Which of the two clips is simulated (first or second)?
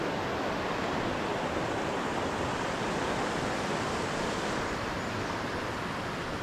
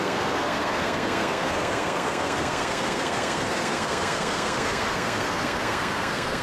second